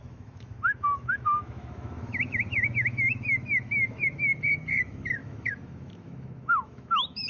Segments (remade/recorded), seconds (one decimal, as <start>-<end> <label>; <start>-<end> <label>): 0.0-7.3 remade